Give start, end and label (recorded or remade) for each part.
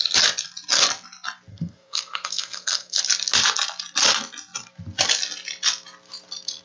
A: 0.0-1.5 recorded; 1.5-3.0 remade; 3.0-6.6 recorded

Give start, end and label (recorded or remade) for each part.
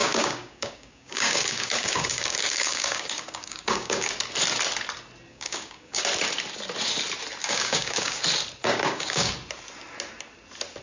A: 0.0-4.1 remade; 4.1-5.3 recorded; 5.3-6.0 remade; 6.0-7.4 recorded; 7.4-8.2 remade; 8.2-8.6 recorded; 8.6-9.3 remade; 9.3-10.8 recorded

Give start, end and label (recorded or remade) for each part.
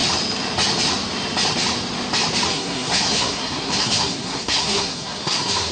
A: 0.0-2.5 recorded; 2.5-5.7 remade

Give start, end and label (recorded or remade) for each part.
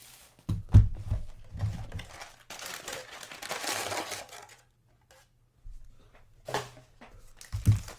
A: 0.0-8.0 recorded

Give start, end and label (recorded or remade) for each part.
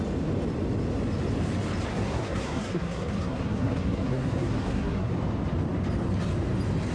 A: 0.0-1.9 recorded; 1.9-5.1 remade; 5.1-6.9 recorded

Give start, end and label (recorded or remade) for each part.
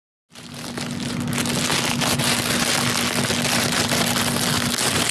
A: 0.0-5.1 recorded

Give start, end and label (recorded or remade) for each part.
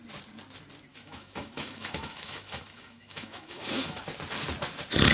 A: 0.0-0.9 recorded; 0.9-4.0 remade; 4.0-5.1 recorded